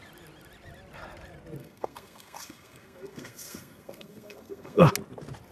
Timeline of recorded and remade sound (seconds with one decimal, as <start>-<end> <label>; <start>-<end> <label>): 0.0-1.6 recorded; 1.6-4.9 remade; 4.9-5.5 recorded